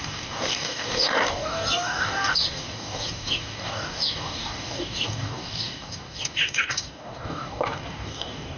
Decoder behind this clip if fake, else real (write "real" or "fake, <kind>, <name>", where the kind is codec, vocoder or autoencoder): fake, codec, DAC